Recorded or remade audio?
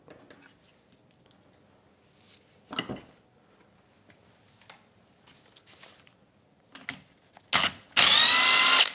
recorded